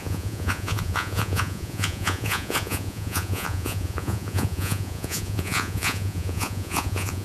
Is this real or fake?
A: fake